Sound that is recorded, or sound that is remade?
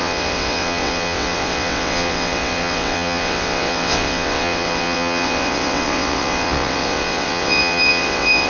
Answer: remade